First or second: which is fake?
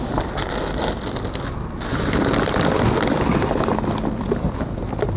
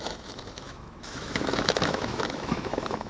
second